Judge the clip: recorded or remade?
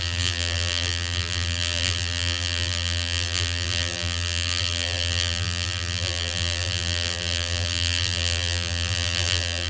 remade